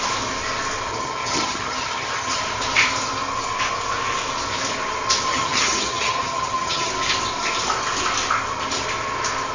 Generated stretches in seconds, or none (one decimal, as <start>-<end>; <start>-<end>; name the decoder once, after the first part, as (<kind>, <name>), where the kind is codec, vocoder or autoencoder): 0.9-2.4 (vocoder, HiFi-GAN); 5.3-6.9